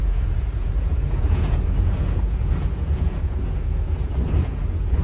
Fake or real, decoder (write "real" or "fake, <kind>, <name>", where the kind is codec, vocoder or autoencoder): fake, vocoder, Vocos